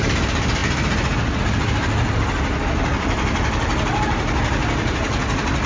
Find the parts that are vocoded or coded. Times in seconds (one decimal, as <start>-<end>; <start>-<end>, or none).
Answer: none